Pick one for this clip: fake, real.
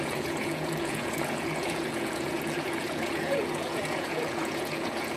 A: fake